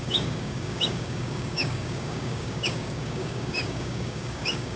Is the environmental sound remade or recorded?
remade